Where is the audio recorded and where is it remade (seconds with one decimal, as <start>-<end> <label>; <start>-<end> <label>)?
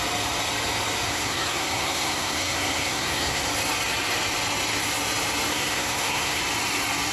0.0-1.1 recorded; 1.1-3.4 remade; 3.4-5.5 recorded; 5.5-6.4 remade; 6.4-7.1 recorded